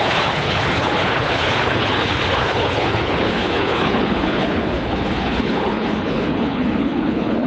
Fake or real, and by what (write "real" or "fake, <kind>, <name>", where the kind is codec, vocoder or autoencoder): fake, codec, HILCodec